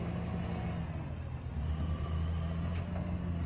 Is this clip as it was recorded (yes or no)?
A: yes